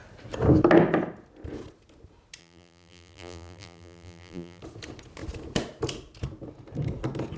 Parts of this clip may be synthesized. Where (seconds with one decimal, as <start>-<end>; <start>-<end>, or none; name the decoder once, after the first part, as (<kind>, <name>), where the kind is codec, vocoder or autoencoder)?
2.4-4.6 (vocoder, BigVGAN v2)